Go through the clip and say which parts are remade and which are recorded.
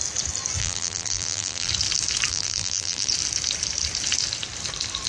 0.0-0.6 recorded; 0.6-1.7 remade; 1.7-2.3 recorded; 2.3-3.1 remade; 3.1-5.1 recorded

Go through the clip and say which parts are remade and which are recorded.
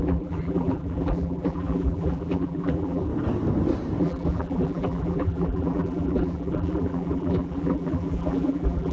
0.0-3.1 remade; 3.1-4.0 recorded; 4.0-8.9 remade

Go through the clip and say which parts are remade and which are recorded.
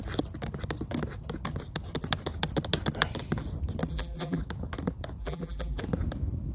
0.0-3.9 recorded; 3.9-4.4 remade; 4.4-5.2 recorded; 5.2-5.8 remade; 5.8-6.5 recorded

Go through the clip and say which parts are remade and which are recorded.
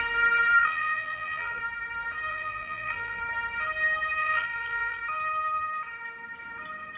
0.0-0.6 recorded; 0.6-1.6 remade; 1.6-2.3 recorded; 2.3-3.2 remade; 3.2-4.2 recorded; 4.2-5.0 remade; 5.0-7.0 recorded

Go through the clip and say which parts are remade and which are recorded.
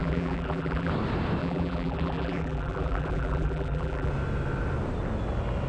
0.0-0.9 remade; 0.9-1.4 recorded; 1.4-4.1 remade; 4.1-5.7 recorded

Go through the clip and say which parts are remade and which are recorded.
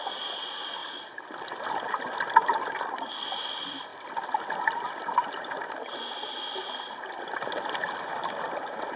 0.0-3.9 remade; 3.9-6.9 recorded; 6.9-9.0 remade